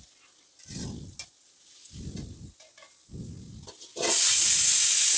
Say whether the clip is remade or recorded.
recorded